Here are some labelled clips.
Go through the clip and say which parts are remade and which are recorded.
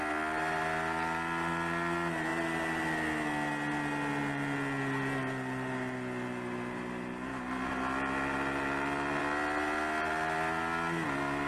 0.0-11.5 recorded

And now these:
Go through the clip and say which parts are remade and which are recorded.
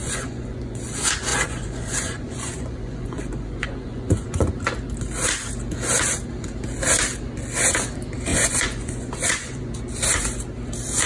0.0-0.9 remade; 0.9-1.3 recorded; 1.3-4.5 remade; 4.5-8.3 recorded; 8.3-9.8 remade; 9.8-11.1 recorded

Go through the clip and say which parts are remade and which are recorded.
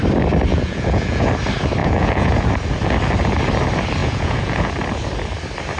0.0-0.5 recorded; 0.5-1.3 remade; 1.3-1.8 recorded; 1.8-2.5 remade; 2.5-4.0 recorded; 4.0-4.7 remade; 4.7-5.8 recorded